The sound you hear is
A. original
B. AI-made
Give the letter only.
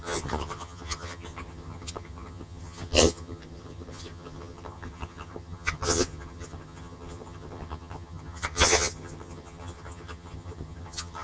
B